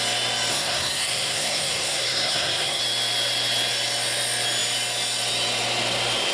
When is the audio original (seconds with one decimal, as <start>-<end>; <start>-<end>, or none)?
0.0-0.5; 2.8-6.3